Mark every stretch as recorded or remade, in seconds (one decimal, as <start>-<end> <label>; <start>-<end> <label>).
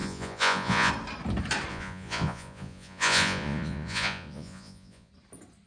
0.0-0.9 remade; 0.9-1.7 recorded; 1.7-5.1 remade; 5.1-5.7 recorded